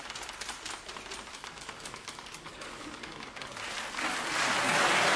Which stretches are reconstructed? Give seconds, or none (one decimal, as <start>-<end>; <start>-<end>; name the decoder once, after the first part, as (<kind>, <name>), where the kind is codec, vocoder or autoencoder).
1.3-3.5 (codec, DAC)